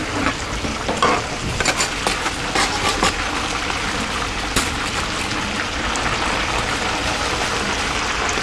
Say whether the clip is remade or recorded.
recorded